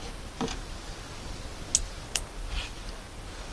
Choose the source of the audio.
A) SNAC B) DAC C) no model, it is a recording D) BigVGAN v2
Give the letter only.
C